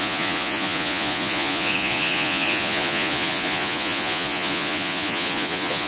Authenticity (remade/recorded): remade